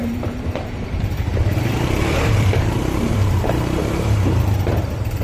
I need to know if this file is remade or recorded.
remade